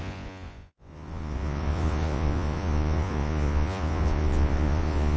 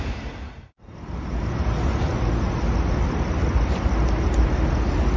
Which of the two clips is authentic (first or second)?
second